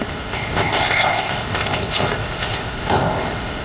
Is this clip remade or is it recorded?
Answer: remade